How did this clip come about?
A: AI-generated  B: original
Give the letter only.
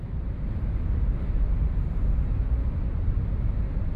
A